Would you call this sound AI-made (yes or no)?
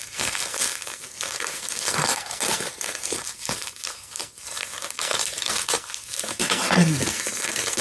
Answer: yes